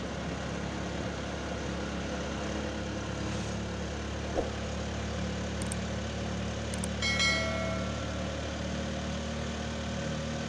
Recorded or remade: recorded